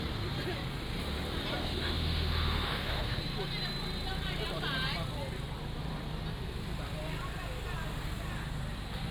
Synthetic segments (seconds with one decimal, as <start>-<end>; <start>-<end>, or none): 1.6-3.2